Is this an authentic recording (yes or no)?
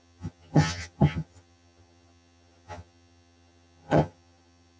no